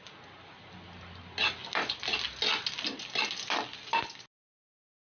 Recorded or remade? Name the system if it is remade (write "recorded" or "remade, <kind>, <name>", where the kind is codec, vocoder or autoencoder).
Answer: recorded